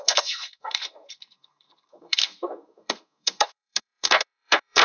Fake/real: fake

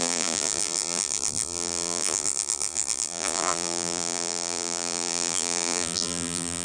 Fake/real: fake